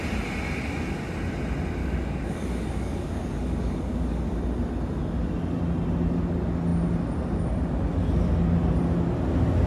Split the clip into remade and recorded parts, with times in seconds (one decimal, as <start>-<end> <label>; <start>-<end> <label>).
0.0-1.8 recorded; 1.8-4.4 remade; 4.4-9.7 recorded